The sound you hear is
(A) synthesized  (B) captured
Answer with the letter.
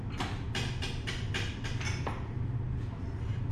B